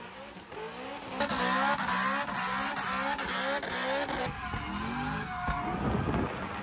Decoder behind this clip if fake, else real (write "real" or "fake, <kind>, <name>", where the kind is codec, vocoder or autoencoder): real